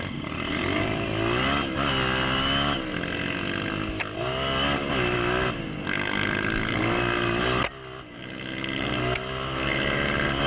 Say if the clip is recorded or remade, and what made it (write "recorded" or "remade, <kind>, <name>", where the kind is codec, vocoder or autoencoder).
recorded